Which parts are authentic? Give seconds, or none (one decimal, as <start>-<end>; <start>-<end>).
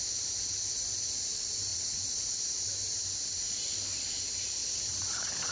0.0-1.7; 2.3-4.6